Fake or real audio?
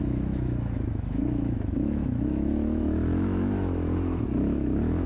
fake